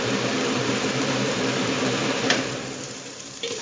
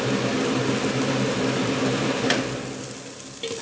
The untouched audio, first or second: second